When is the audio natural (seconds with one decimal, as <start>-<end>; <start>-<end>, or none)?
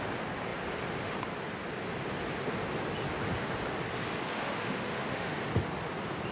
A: 0.0-4.3; 5.4-6.3